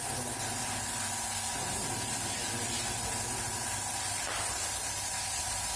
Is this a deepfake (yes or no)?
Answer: no